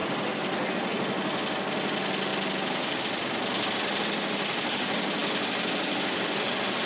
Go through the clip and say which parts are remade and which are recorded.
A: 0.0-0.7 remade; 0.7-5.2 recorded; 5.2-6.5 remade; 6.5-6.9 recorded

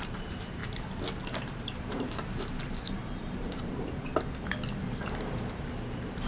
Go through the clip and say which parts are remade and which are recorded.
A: 0.0-0.6 remade; 0.6-1.4 recorded; 1.4-4.1 remade; 4.1-5.0 recorded; 5.0-6.3 remade

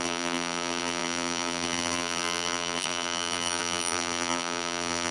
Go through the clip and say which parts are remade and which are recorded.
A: 0.0-5.1 remade

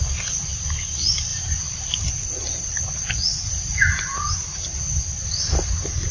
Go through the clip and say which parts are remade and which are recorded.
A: 0.0-1.3 recorded; 1.3-2.1 remade; 2.1-6.1 recorded

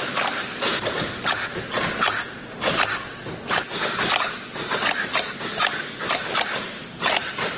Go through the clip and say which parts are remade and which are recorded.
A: 0.0-3.7 remade; 3.7-5.5 recorded; 5.5-7.6 remade

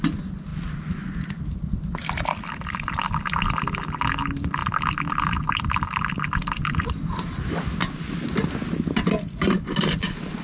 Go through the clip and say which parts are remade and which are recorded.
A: 0.0-10.4 recorded

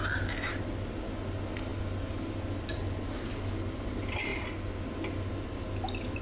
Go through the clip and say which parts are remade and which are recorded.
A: 0.0-0.6 remade; 0.6-6.2 recorded